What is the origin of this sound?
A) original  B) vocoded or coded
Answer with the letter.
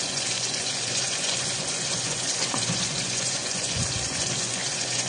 B